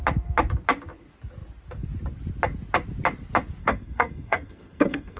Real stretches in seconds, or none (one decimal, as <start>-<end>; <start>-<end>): 0.0-3.6